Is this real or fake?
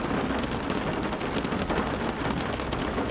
real